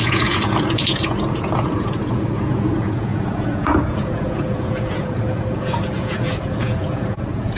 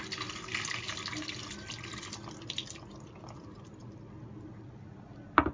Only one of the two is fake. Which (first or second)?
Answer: first